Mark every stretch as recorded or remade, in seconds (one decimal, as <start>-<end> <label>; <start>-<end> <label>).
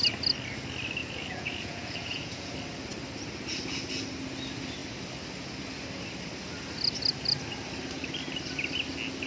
0.0-1.0 recorded; 1.0-2.5 remade; 2.5-9.3 recorded